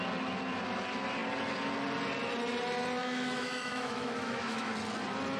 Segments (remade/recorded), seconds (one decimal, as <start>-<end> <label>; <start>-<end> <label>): 0.0-3.0 recorded; 3.0-4.7 remade; 4.7-5.4 recorded